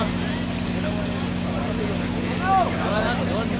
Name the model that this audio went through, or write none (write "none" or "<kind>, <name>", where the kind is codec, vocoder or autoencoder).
none